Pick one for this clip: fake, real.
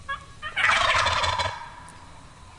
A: real